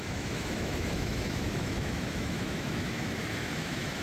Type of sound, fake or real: fake